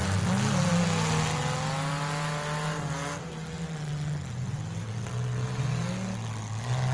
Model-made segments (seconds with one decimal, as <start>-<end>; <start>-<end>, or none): none